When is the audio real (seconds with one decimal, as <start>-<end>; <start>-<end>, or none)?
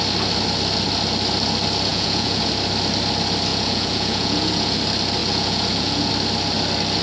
0.0-1.9; 2.5-3.5; 4.8-5.2; 6.1-7.0